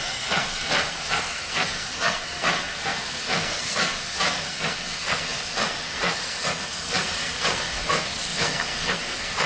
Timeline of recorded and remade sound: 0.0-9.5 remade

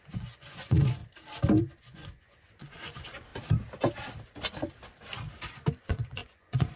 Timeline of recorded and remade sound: 0.0-1.0 remade; 1.0-1.6 recorded; 1.6-3.3 remade; 3.3-5.8 recorded; 5.8-6.8 remade

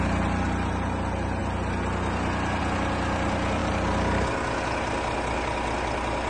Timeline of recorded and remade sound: 0.0-6.3 recorded

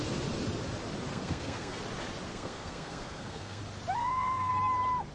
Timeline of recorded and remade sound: 0.0-1.1 recorded; 1.1-1.8 remade; 1.8-2.3 recorded; 2.3-3.6 remade; 3.6-4.0 recorded; 4.0-4.5 remade; 4.5-5.1 recorded

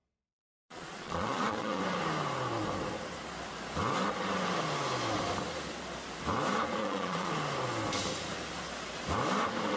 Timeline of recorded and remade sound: 0.0-1.8 remade; 1.8-6.8 recorded; 6.8-7.3 remade; 7.3-9.8 recorded

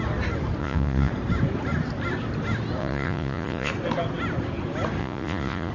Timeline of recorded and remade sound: 0.0-0.6 recorded; 0.6-1.1 remade; 1.1-2.8 recorded; 2.8-3.7 remade; 3.7-5.0 recorded; 5.0-5.7 remade